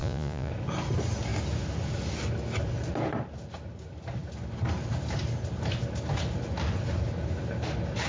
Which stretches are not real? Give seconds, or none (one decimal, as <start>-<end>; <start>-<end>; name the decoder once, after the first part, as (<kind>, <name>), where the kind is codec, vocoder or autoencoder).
0.0-0.5 (vocoder, Vocos)

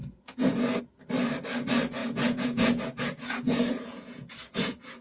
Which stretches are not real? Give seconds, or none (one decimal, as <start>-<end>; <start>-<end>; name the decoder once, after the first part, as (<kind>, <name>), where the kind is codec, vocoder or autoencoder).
0.0-0.8 (vocoder, Vocos); 2.0-5.0

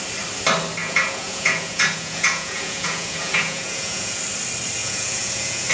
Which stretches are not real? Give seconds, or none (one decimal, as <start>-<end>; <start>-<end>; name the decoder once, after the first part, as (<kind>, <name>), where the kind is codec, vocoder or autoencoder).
0.8-4.2 (vocoder, Vocos); 4.8-5.7

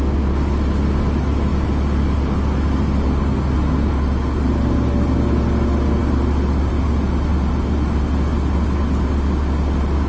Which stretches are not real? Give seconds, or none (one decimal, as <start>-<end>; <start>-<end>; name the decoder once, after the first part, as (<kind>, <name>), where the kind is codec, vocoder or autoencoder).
none

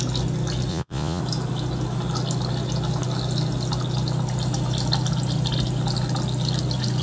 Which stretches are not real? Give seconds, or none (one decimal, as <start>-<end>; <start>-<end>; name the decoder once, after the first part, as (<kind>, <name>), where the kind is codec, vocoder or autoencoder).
0.7-1.2 (vocoder, Vocos)

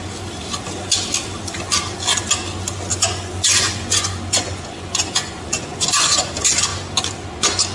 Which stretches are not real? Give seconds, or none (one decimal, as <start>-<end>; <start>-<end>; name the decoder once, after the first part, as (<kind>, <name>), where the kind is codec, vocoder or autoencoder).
2.9-6.3 (vocoder, Vocos)